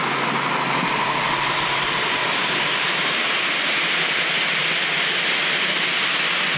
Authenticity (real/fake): real